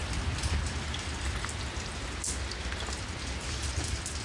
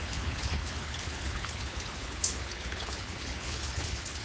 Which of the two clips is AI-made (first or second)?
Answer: second